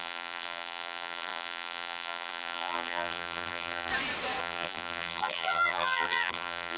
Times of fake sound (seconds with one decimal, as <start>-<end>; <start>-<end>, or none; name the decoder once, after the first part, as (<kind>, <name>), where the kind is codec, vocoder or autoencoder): 0.0-3.9 (vocoder, BigVGAN v2); 4.4-6.8